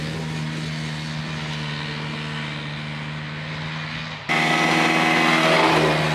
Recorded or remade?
recorded